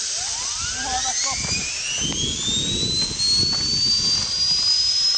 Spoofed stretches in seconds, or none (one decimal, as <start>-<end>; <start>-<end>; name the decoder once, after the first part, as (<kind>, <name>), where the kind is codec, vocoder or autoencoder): none